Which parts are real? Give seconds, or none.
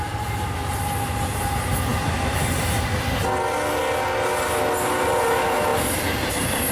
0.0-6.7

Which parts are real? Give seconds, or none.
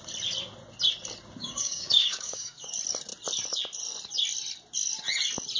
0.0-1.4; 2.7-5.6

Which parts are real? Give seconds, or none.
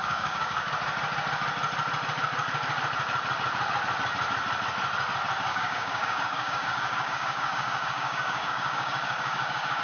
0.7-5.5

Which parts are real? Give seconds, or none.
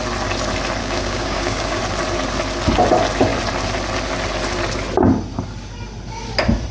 0.0-0.8; 1.8-6.7